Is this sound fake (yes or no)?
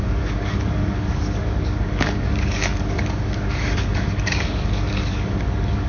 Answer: yes